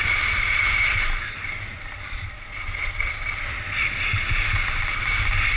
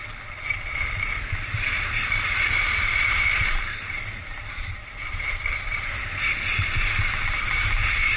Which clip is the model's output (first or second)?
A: second